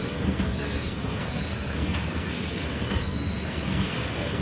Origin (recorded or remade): remade